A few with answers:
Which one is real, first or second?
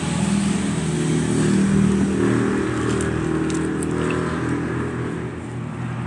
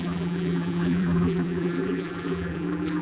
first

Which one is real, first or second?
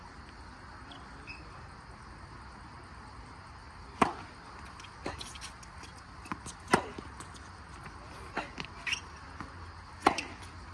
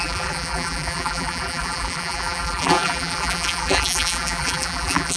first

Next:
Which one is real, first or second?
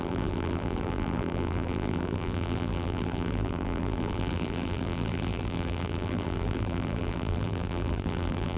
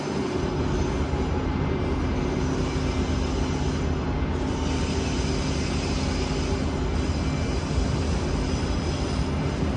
second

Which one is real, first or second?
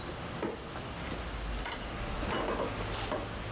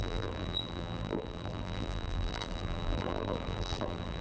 first